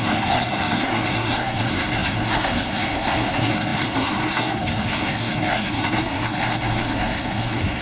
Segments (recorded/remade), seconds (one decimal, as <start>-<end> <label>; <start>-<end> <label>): 0.0-7.8 remade